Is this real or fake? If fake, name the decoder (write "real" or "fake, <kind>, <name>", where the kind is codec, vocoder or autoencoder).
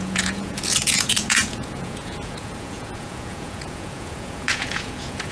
fake, vocoder, Vocos